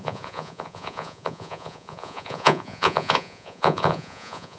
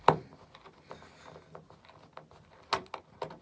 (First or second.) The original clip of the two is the second